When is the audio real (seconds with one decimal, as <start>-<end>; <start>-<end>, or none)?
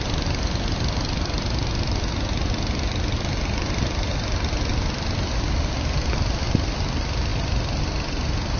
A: 0.0-8.6